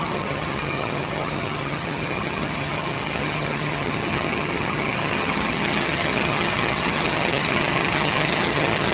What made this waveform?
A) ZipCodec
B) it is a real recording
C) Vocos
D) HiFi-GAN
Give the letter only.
D